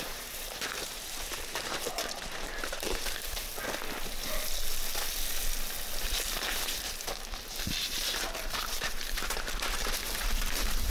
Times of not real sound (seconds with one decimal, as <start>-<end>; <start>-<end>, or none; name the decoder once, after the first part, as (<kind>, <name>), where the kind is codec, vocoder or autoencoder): 0.0-3.5 (vocoder, BigVGAN v2); 6.0-10.9